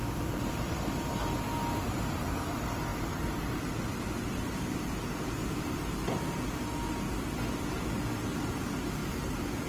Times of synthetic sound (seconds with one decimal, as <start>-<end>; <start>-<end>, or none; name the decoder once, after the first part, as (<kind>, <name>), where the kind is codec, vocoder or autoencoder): 9.0-9.7 (vocoder, BigVGAN v2)